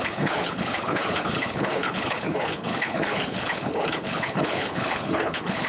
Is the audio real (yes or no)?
no